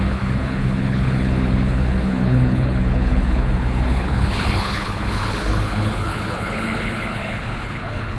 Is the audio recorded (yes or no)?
no